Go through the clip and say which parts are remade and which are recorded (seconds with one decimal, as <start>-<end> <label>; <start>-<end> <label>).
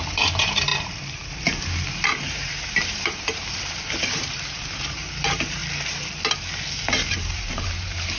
0.0-5.6 remade; 5.6-6.9 recorded; 6.9-8.2 remade